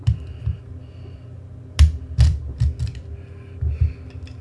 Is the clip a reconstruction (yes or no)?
no